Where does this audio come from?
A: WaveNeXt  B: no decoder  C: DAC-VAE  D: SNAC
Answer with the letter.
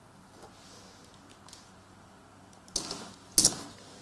B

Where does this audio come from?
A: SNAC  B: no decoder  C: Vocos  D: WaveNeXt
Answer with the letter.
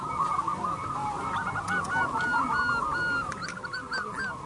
B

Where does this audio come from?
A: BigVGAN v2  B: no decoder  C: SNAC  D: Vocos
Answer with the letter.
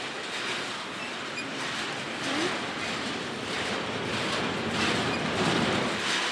B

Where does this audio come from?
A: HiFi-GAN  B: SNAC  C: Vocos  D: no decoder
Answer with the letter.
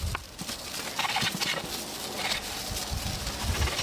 D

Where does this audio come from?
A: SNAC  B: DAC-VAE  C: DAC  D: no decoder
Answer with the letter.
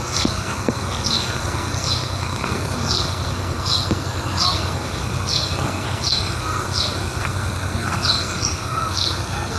A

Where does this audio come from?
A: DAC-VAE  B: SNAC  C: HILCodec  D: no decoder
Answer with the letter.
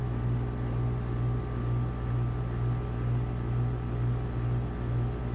D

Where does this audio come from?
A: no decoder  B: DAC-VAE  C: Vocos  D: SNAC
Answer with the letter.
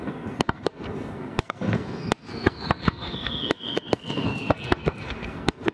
D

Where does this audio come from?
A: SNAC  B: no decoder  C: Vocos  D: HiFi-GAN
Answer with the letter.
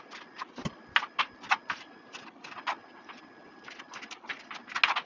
B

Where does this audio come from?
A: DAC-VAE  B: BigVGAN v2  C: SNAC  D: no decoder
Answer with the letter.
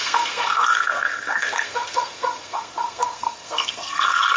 C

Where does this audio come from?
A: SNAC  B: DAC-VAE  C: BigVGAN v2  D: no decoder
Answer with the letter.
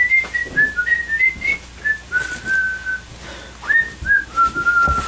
D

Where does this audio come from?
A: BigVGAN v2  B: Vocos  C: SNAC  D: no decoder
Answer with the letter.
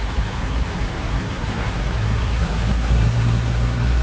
C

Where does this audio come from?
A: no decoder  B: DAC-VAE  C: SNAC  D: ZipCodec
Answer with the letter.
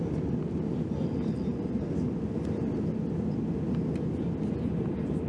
A